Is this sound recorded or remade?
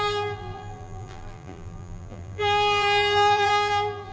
remade